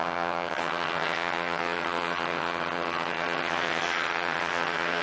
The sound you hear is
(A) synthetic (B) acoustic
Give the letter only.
A